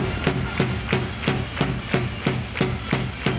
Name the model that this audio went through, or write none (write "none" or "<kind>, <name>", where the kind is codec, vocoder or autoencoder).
none